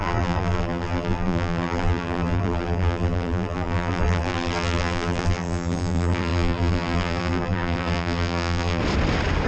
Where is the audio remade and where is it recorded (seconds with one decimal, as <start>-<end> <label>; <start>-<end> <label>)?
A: 0.0-8.8 remade; 8.8-9.5 recorded